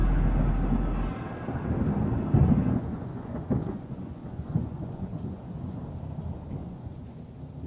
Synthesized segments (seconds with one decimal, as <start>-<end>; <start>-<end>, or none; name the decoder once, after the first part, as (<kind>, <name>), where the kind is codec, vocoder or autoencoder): 2.6-5.8 (vocoder, Vocos); 6.6-7.2